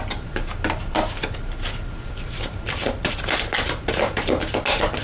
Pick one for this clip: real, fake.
real